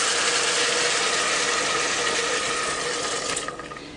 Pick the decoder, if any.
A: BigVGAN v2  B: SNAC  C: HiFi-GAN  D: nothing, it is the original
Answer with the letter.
A